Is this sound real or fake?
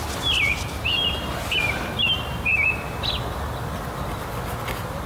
real